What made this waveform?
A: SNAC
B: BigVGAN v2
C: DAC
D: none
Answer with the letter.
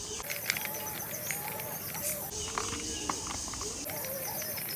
D